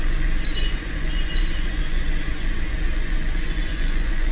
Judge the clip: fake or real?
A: fake